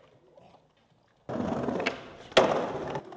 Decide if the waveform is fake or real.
real